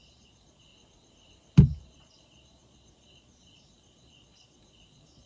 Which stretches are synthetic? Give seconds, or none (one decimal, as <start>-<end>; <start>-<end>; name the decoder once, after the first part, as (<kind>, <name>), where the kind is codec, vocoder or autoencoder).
0.0-0.7 (vocoder, Vocos); 1.8-5.3